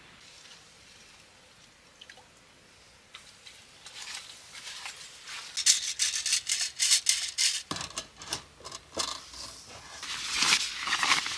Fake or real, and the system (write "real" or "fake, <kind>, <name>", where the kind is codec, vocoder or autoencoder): real